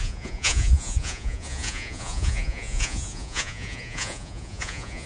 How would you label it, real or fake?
fake